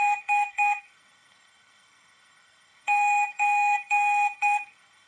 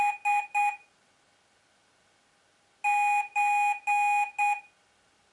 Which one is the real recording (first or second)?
second